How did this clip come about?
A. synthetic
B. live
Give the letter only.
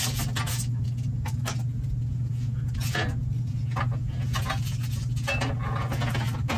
B